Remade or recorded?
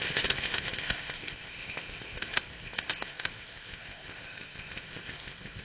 remade